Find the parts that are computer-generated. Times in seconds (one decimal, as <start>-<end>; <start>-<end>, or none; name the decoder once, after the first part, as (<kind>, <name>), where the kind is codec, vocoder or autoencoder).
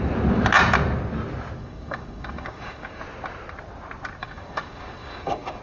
1.6-3.0 (codec, DAC); 4.2-5.6